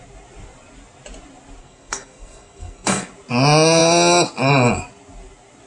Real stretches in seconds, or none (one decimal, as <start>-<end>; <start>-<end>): 0.0-1.6; 3.1-5.7